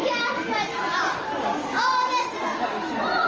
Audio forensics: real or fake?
real